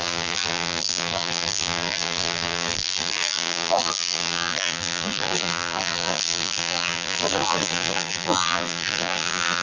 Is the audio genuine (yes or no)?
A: no